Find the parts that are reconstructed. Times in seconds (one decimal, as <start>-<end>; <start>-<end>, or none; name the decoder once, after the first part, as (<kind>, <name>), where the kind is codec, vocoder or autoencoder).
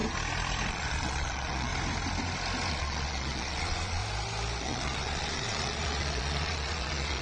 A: 0.7-1.7 (vocoder, Vocos); 2.7-4.0; 4.6-7.2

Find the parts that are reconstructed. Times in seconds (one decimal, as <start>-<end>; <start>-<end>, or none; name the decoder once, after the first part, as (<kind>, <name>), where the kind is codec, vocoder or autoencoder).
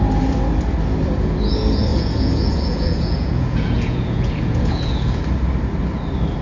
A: 1.9-5.2 (vocoder, Vocos)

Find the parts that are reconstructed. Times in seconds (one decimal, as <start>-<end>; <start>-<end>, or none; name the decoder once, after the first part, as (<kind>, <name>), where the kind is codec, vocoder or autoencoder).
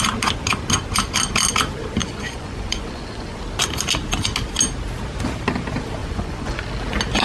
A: 2.0-3.4 (vocoder, Vocos); 6.0-6.6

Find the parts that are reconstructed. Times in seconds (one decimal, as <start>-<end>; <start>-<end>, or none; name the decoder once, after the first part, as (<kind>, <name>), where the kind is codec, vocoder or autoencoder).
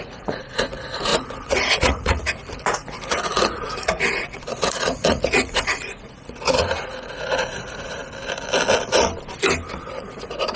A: 0.0-8.0 (vocoder, Vocos); 10.2-10.6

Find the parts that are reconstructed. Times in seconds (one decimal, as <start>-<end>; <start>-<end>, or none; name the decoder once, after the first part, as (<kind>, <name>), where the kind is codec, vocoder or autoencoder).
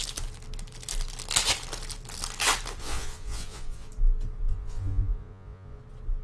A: 2.8-3.9 (vocoder, Vocos); 4.5-5.8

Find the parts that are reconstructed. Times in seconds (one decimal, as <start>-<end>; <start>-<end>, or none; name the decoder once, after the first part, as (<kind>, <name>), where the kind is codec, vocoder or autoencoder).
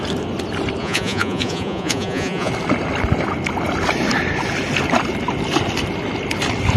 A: 0.8-2.5 (vocoder, Vocos)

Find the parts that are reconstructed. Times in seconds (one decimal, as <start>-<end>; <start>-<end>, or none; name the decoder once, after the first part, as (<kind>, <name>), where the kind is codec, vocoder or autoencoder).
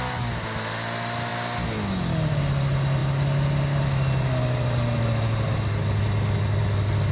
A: none